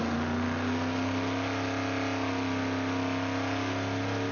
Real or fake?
real